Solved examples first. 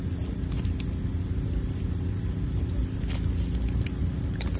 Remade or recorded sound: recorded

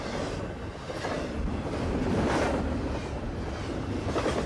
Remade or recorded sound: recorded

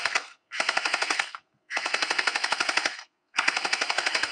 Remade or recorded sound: remade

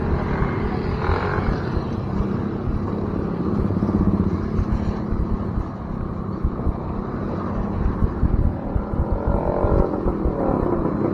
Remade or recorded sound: recorded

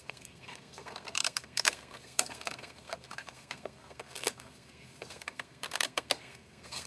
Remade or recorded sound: remade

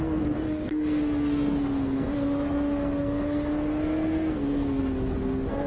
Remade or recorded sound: remade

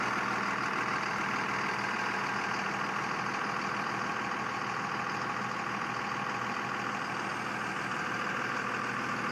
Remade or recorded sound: recorded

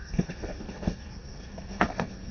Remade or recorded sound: remade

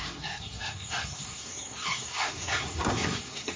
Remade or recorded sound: remade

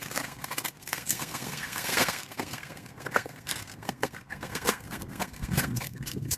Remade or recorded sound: remade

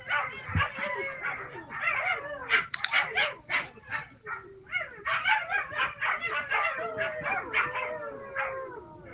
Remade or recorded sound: recorded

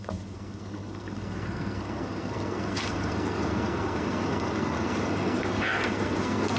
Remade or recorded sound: remade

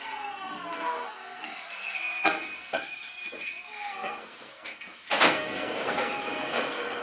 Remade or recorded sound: remade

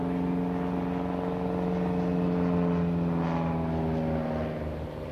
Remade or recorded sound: recorded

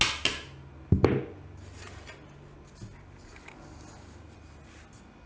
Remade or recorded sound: recorded